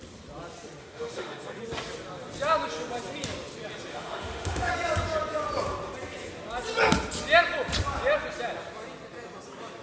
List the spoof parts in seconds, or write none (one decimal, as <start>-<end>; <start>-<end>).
0.8-1.6; 3.9-4.7

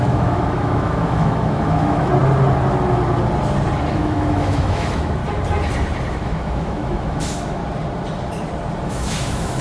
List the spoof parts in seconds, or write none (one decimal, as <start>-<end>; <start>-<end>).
0.0-2.1; 3.9-5.2; 6.1-7.6; 8.9-9.6

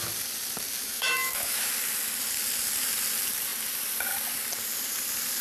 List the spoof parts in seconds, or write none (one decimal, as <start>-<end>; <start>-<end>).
0.8-1.7

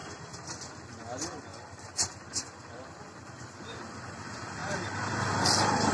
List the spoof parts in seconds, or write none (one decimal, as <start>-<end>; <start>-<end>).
none

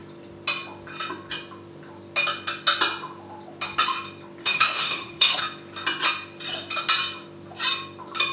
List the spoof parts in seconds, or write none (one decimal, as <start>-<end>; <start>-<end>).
4.4-5.4

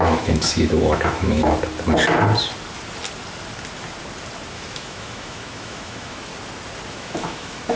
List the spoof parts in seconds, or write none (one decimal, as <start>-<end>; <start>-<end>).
0.0-1.4; 4.5-6.3; 6.9-7.8